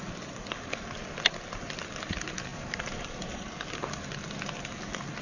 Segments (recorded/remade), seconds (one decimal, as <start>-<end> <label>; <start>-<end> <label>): 0.0-2.5 recorded; 2.5-3.8 remade; 3.8-5.2 recorded